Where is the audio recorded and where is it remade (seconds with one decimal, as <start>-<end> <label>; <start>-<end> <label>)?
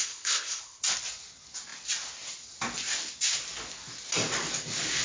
0.0-0.8 remade; 0.8-5.0 recorded